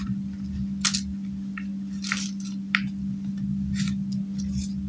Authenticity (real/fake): real